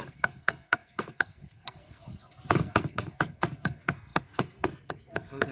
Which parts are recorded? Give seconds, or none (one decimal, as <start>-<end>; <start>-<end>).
none